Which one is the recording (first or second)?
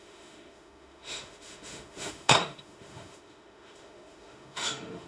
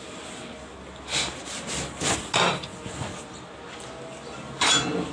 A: second